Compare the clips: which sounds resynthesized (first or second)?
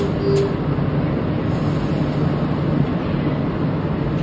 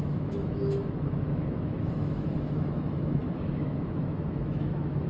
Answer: second